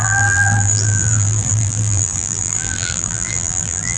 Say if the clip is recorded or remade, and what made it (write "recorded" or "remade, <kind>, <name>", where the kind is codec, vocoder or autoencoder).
remade, vocoder, BigVGAN v2